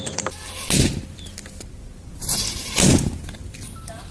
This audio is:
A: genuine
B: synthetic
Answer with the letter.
A